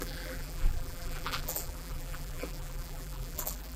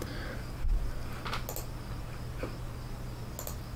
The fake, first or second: first